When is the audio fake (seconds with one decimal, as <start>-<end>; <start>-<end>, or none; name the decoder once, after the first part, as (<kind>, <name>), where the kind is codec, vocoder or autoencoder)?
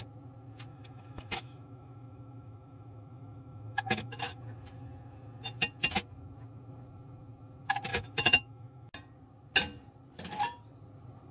0.7-4.4 (autoencoder, DAC-VAE); 7.9-8.9